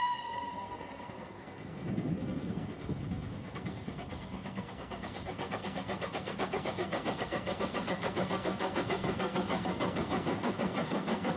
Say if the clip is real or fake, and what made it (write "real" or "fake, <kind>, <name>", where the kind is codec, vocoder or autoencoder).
fake, codec, SNAC